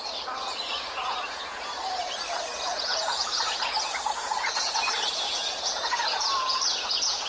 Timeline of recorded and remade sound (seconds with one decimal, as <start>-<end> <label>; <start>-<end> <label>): 0.0-0.4 recorded; 0.4-2.0 remade; 2.0-2.5 recorded; 2.5-7.3 remade